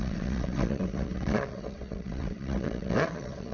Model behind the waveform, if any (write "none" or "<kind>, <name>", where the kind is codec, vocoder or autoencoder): vocoder, WaveNeXt